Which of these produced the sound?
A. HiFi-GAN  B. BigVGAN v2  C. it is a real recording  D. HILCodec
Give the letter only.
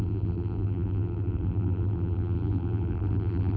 B